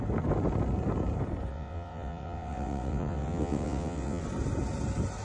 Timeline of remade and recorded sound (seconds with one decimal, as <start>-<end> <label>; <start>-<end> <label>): 0.0-1.5 recorded; 1.5-4.2 remade; 4.2-5.2 recorded